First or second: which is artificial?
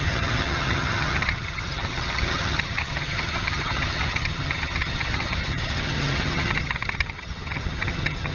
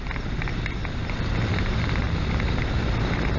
first